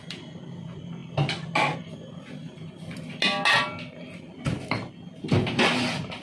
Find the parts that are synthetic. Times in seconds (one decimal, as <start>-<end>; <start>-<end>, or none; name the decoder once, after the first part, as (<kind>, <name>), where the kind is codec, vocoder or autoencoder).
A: none